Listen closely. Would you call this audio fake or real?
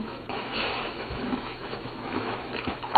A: fake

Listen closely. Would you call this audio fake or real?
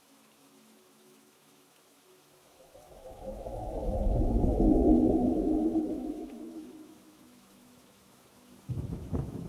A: fake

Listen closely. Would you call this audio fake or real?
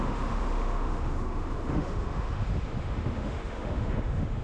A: fake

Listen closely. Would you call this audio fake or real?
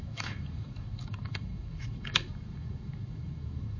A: fake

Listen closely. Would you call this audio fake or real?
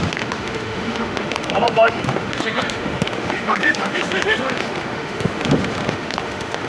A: fake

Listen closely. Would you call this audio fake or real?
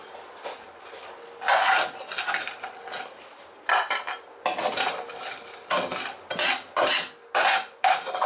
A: real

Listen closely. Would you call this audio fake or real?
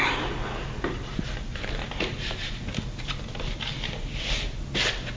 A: real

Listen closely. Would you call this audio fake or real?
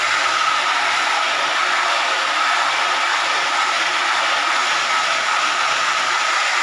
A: real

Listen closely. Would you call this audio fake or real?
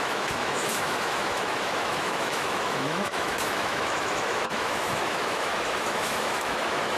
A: fake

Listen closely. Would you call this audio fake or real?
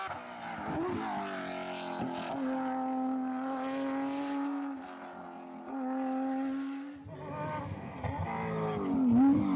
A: real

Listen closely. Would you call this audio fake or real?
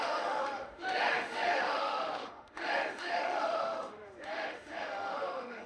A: fake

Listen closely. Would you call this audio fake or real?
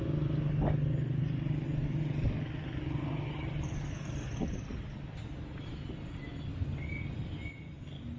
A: real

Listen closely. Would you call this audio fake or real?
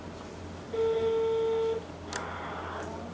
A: real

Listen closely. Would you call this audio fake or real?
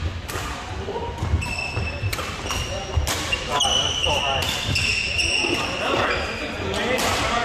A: real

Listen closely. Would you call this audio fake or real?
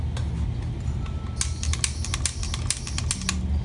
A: real